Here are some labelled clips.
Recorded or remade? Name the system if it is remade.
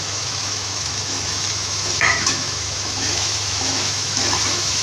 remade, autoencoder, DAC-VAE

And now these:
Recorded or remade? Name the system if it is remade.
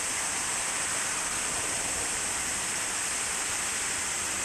remade, vocoder, BigVGAN v2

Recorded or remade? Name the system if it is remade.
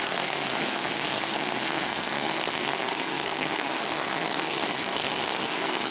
remade, codec, SNAC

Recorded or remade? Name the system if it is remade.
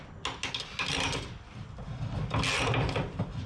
recorded